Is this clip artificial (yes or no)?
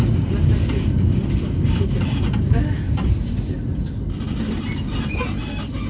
no